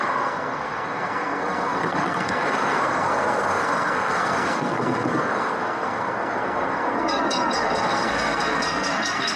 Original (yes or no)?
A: no